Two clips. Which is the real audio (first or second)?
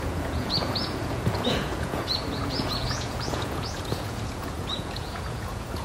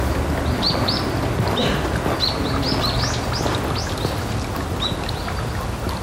second